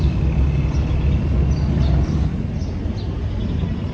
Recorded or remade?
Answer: recorded